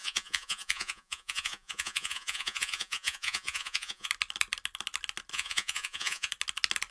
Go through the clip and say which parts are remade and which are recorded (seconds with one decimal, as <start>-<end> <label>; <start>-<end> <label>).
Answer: 0.0-4.1 remade; 4.1-5.3 recorded; 5.3-6.3 remade; 6.3-6.9 recorded